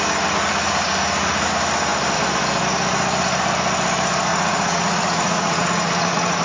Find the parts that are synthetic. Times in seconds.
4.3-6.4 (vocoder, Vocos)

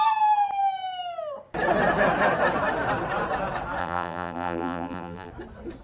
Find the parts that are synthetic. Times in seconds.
3.8-5.3 (vocoder, BigVGAN v2)